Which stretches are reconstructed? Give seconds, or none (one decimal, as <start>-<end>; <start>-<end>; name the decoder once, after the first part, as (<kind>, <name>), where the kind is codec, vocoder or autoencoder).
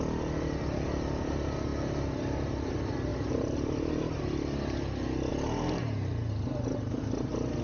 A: 3.1-4.0 (vocoder, BigVGAN v2); 5.3-6.3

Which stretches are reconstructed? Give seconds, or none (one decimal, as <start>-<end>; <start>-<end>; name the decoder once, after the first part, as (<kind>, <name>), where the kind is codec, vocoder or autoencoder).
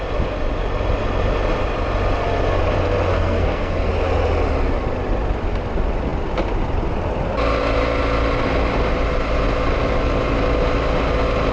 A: 3.1-3.9 (codec, SNAC)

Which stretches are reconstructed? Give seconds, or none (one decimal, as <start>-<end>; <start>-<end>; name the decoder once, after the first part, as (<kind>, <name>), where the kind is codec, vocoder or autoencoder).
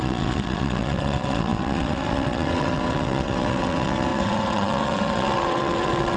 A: 0.0-6.2 (vocoder, WaveNeXt)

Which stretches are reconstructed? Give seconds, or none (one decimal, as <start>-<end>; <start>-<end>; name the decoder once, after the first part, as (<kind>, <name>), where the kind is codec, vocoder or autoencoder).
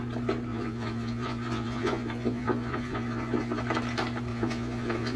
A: 0.5-3.6 (vocoder, Vocos); 4.3-5.2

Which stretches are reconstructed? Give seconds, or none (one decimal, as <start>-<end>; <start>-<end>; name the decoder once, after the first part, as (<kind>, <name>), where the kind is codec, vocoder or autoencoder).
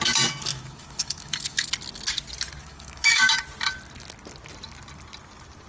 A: 0.5-1.7 (autoencoder, DAC-VAE); 2.6-3.4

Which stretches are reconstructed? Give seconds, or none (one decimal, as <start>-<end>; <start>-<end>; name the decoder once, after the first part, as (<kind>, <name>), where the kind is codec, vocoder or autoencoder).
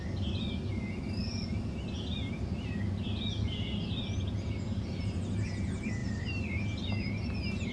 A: none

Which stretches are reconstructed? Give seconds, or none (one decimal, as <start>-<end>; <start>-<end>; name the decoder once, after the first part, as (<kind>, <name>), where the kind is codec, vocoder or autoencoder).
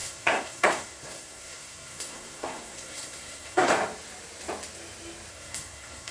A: 0.0-3.7 (codec, SNAC); 5.3-6.1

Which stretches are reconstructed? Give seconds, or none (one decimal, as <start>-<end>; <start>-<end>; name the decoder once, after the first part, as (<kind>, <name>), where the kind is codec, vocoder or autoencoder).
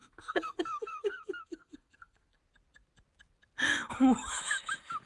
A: 0.0-2.4 (codec, SNAC)